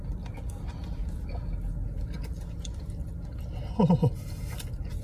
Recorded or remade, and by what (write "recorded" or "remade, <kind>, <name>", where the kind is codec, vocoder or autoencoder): recorded